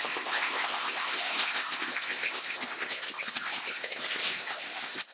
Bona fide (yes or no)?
no